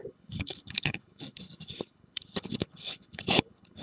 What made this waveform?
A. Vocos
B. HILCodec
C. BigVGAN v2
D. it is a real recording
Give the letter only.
B